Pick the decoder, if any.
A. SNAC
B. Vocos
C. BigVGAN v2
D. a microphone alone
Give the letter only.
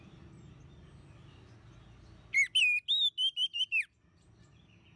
D